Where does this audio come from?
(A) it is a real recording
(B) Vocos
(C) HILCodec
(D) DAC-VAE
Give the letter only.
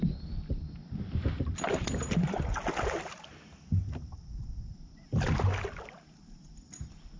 A